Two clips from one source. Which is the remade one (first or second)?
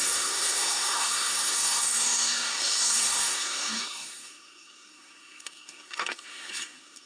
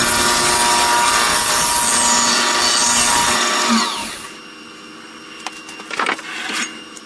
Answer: first